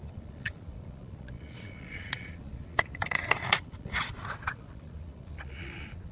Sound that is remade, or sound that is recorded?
remade